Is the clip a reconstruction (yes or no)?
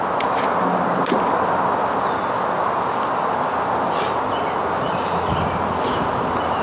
no